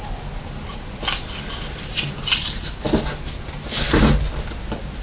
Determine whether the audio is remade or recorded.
recorded